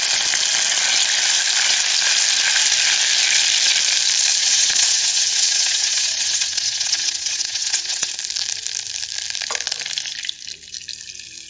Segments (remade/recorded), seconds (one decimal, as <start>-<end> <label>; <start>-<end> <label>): 0.0-4.4 recorded; 4.4-8.1 remade; 8.1-11.5 recorded